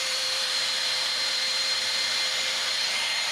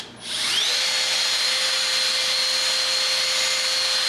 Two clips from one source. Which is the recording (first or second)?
second